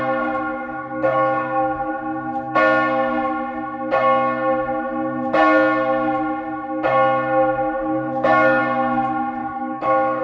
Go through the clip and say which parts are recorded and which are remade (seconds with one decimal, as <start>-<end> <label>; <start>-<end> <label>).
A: 0.0-0.5 recorded; 0.5-1.9 remade; 1.9-7.8 recorded; 7.8-8.6 remade; 8.6-9.4 recorded; 9.4-10.2 remade